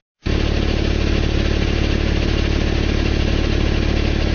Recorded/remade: recorded